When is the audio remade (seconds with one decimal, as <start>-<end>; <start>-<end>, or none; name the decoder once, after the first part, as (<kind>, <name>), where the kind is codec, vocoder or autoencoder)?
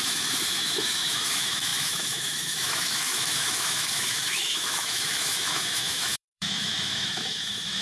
0.0-7.8 (autoencoder, DAC-VAE)